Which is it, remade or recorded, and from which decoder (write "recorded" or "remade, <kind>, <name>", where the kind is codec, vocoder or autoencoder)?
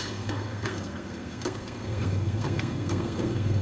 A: remade, codec, SNAC